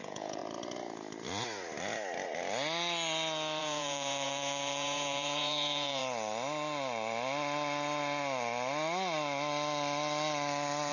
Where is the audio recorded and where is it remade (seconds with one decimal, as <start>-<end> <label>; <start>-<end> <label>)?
0.0-0.4 remade; 0.4-3.6 recorded; 3.6-6.0 remade; 6.0-10.9 recorded